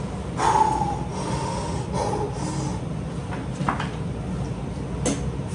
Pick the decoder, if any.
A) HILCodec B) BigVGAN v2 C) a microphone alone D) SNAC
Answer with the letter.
C